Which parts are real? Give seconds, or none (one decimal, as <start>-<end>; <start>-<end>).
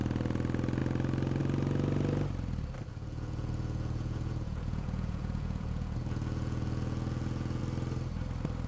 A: 0.0-2.9; 7.6-8.7